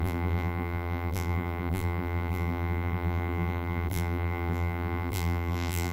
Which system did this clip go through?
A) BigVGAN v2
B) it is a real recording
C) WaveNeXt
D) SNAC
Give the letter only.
A